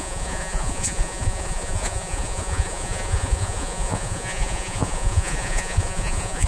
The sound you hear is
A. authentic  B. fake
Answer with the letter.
B